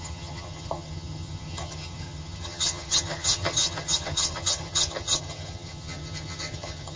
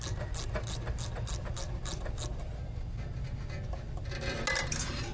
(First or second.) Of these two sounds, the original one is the second